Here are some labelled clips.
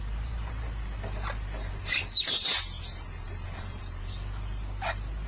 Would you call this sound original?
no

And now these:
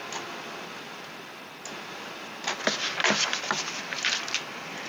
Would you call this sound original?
yes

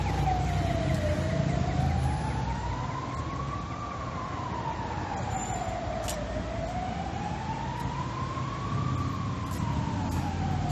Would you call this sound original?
yes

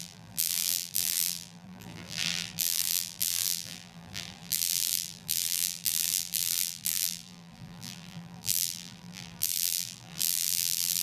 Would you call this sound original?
no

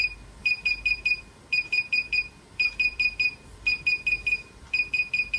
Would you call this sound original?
no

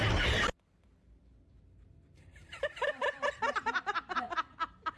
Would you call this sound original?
no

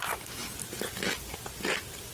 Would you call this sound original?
yes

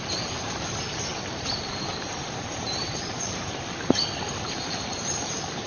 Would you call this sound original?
no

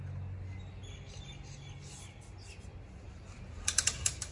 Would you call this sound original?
yes